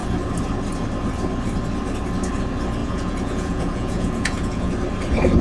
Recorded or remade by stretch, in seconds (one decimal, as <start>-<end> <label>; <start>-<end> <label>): 0.0-2.8 recorded; 2.8-4.7 remade; 4.7-5.4 recorded